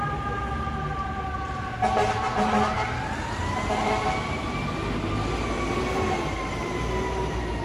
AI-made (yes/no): no